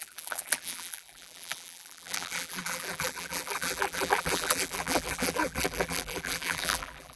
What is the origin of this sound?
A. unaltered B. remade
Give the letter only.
B